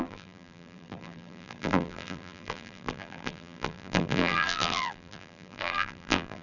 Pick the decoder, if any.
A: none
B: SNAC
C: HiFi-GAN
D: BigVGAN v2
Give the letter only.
D